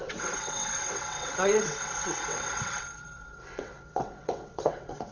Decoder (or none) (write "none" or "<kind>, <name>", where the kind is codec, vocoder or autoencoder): vocoder, WaveNeXt